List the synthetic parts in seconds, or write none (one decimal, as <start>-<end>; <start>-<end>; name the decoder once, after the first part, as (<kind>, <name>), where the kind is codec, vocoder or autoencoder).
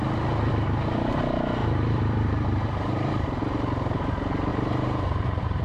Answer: 1.6-3.4 (vocoder, BigVGAN v2); 4.5-5.6